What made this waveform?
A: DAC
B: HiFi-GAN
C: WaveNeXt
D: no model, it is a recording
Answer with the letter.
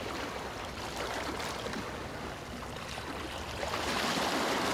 D